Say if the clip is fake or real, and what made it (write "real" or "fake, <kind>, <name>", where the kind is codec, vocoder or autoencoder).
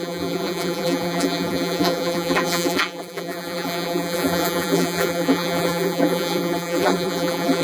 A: fake, vocoder, BigVGAN v2